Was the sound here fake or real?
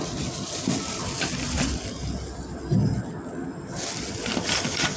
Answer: real